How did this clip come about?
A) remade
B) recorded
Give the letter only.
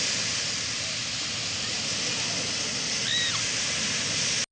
B